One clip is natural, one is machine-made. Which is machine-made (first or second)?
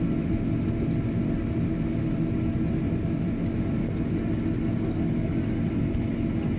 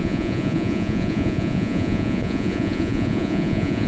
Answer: second